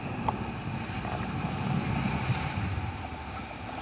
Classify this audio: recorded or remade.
recorded